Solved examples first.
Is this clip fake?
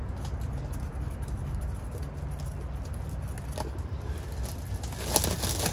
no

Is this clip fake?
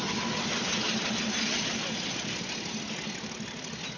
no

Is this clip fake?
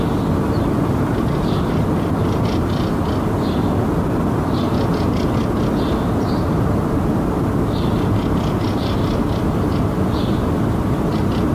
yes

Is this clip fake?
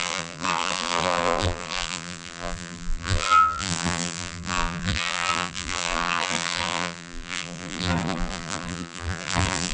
yes